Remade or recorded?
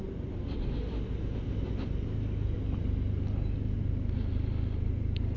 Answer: recorded